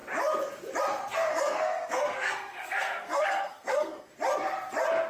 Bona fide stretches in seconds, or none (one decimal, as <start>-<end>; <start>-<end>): 0.0-1.3; 4.1-5.1